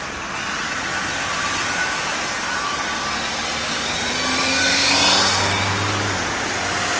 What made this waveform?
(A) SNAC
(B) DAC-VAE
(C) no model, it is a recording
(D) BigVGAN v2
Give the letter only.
C